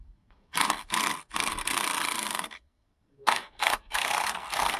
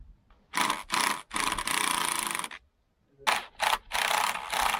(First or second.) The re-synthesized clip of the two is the first